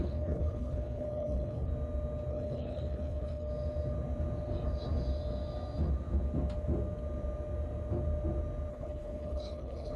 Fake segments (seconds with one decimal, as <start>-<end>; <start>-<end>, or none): 0.0-1.7; 2.3-3.5; 8.7-10.0